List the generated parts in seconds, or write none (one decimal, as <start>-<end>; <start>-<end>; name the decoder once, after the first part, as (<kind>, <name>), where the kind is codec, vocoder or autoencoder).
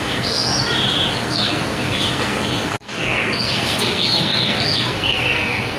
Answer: 0.0-0.5 (codec, SNAC); 1.1-5.8